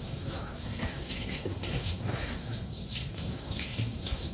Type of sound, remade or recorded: remade